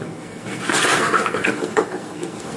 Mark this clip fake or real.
fake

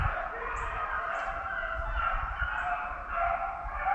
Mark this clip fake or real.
real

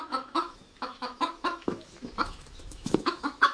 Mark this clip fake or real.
fake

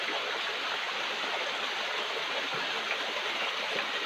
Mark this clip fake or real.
real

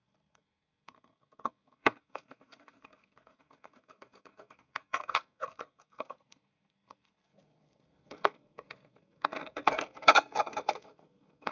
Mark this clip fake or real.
fake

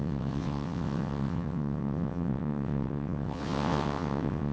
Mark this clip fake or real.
fake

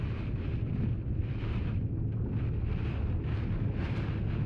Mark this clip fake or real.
real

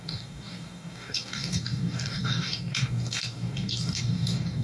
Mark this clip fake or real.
fake